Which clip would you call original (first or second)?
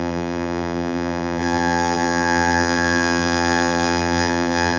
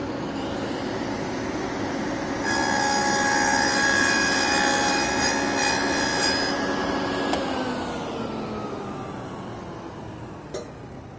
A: second